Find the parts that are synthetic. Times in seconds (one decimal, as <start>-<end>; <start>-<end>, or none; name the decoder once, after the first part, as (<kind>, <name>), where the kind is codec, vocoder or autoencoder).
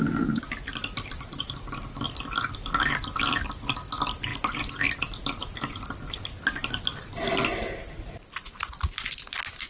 none